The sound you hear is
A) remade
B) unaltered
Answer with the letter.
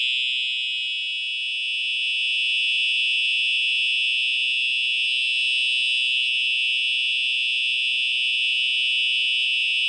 B